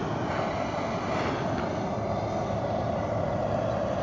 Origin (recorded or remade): recorded